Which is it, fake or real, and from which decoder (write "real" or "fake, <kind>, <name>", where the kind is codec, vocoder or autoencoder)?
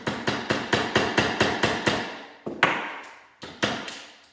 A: real